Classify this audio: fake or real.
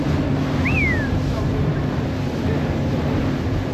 real